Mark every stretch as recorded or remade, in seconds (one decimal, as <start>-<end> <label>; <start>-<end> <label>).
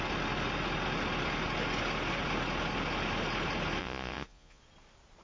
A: 0.0-3.8 recorded; 3.8-4.6 remade; 4.6-5.2 recorded